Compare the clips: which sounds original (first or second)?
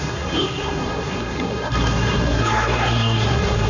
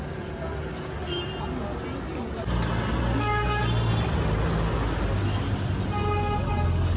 second